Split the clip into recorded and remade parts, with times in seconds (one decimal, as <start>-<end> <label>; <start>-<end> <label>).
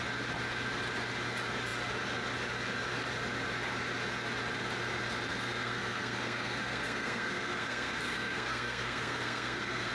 0.0-5.3 recorded; 5.3-9.9 remade